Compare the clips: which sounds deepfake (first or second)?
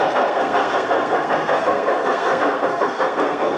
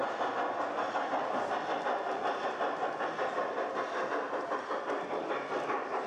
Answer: first